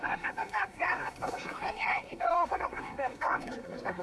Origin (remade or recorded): remade